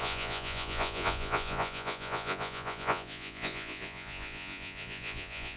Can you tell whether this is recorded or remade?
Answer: remade